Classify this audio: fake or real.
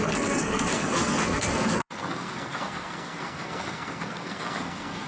fake